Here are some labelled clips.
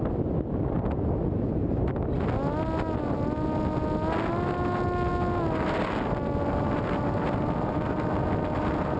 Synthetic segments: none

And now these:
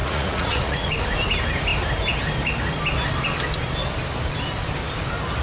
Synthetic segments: 0.0-0.9 (vocoder, Vocos)

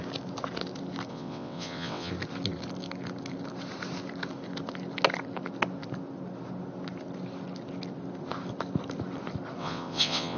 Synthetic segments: 1.1-2.1 (vocoder, WaveNeXt); 9.6-10.4

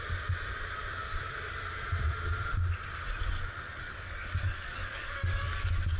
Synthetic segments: 3.7-6.0 (codec, DAC)